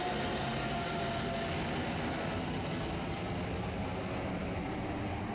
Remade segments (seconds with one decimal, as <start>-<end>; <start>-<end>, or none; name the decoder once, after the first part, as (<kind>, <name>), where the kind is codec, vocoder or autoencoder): none